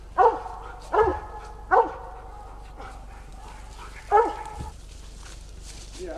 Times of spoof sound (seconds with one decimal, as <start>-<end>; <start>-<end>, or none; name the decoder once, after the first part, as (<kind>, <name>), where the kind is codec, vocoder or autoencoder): none